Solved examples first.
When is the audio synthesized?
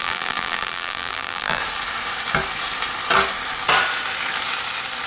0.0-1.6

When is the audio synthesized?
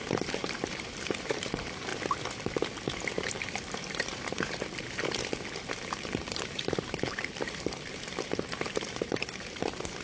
0.0-1.9; 3.1-5.2; 5.8-10.0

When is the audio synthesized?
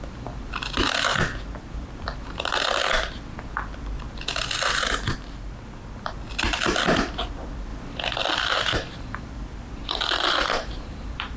0.0-1.1; 1.7-2.1; 6.3-7.7; 8.3-11.4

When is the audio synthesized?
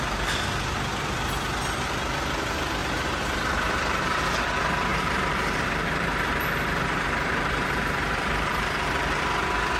2.8-4.5; 4.9-9.2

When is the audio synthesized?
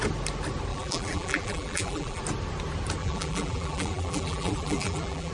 0.7-2.2; 3.0-5.3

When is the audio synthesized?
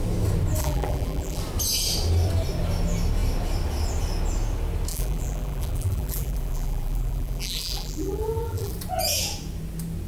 0.6-1.4; 4.9-8.7